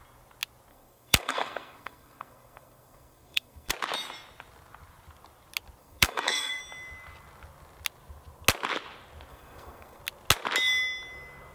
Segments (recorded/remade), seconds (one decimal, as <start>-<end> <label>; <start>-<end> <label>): 0.0-0.7 recorded; 0.7-3.7 remade; 3.7-5.8 recorded; 5.8-6.6 remade; 6.6-9.3 recorded; 9.3-10.0 remade; 10.0-11.5 recorded